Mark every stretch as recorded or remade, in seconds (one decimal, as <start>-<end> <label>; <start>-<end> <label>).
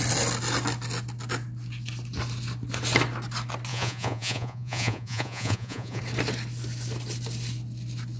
0.0-3.7 recorded; 3.7-6.0 remade; 6.0-8.2 recorded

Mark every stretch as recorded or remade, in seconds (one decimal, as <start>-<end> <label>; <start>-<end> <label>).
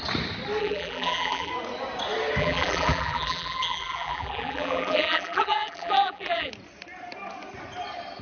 0.0-0.6 recorded; 0.6-1.5 remade; 1.5-2.4 recorded; 2.4-6.5 remade; 6.5-8.2 recorded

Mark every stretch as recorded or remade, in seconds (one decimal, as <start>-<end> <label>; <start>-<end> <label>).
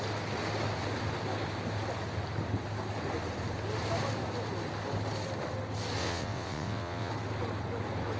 0.0-6.0 recorded; 6.0-7.1 remade; 7.1-8.2 recorded